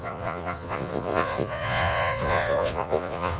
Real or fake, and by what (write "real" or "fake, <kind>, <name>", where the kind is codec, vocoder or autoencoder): fake, vocoder, Vocos